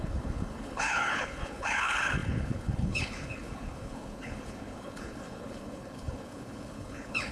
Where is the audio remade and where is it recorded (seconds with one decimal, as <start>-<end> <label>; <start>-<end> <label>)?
0.0-7.3 remade